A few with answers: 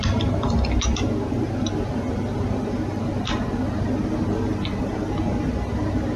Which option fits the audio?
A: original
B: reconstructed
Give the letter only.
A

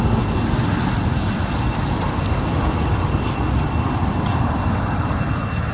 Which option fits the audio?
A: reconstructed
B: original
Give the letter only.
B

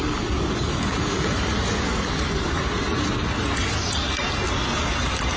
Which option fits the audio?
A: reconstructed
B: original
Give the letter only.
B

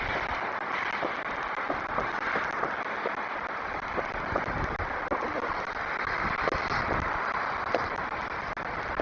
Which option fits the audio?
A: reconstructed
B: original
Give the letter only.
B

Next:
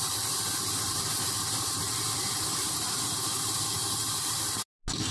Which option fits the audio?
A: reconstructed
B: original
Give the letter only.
B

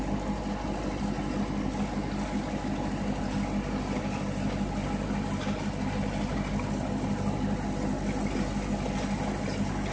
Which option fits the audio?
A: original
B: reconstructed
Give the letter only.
A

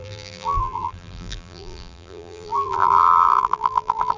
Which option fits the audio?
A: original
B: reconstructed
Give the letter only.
B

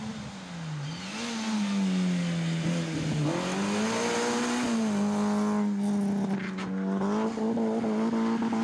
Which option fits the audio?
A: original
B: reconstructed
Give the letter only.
A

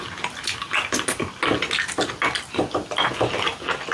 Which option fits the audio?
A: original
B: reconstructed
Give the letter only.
A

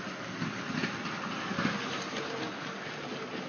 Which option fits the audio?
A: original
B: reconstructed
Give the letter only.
A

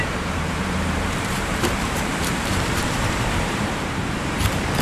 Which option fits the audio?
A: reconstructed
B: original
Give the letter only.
A